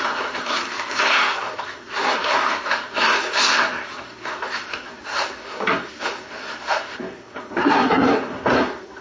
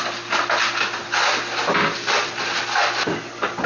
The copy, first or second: first